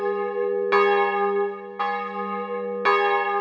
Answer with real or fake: real